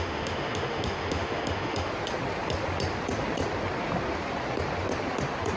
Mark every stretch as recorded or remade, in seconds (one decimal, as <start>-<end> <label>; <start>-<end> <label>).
0.0-1.9 remade; 1.9-5.6 recorded